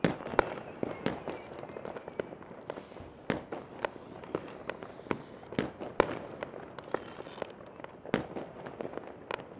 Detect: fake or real real